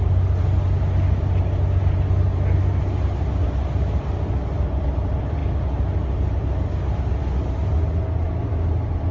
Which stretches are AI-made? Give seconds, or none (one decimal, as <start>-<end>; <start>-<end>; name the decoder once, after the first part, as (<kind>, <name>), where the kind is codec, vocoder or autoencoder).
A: none